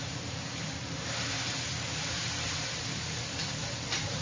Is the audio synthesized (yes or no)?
no